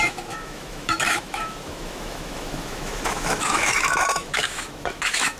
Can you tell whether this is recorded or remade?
remade